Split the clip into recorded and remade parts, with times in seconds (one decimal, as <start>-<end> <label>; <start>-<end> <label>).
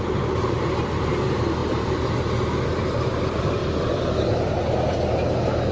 0.0-1.6 recorded; 1.6-2.2 remade; 2.2-3.6 recorded; 3.6-4.5 remade; 4.5-5.7 recorded